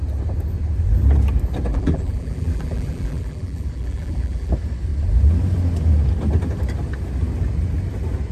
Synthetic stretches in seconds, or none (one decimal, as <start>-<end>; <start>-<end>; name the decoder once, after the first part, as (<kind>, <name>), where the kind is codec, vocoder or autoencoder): 1.7-4.5 (vocoder, BigVGAN v2)